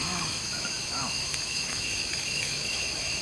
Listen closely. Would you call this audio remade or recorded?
remade